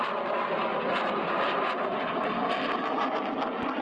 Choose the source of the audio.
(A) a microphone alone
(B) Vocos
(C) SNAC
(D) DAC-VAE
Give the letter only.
A